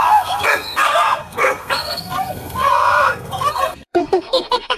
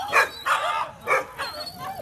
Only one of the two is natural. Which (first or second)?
second